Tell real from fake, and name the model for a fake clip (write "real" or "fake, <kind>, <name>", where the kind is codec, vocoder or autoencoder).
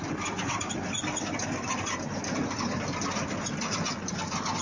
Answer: real